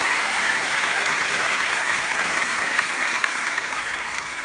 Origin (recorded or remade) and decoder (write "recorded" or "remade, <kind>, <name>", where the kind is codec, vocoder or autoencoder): remade, codec, SNAC